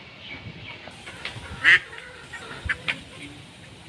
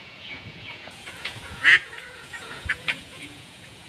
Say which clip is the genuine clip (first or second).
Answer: first